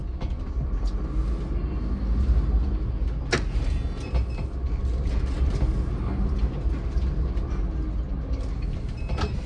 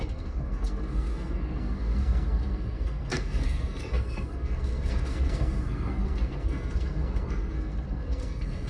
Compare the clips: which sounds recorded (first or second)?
first